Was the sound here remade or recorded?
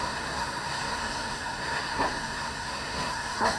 remade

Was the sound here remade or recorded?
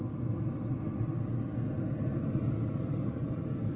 recorded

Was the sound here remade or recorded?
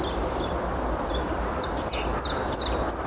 recorded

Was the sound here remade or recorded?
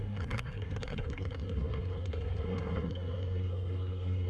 remade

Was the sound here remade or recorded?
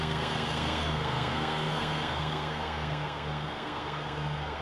remade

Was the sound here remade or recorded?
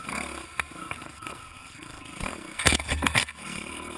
remade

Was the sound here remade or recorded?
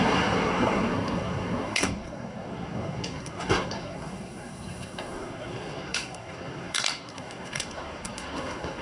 remade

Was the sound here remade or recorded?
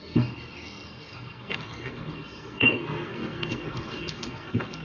remade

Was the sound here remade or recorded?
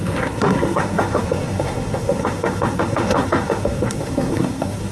remade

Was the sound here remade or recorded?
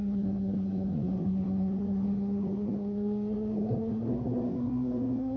remade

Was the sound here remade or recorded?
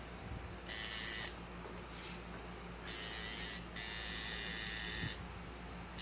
recorded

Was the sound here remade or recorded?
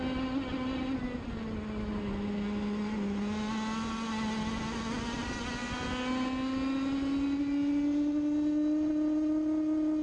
recorded